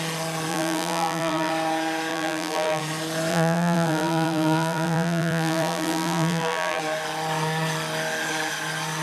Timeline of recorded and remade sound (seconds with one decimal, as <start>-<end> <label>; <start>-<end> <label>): 0.0-0.5 recorded; 0.5-1.5 remade; 1.5-2.1 recorded; 2.1-2.8 remade; 2.8-3.3 recorded; 3.3-6.8 remade; 6.8-9.0 recorded